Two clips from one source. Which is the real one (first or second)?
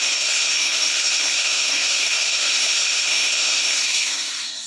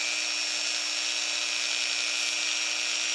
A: second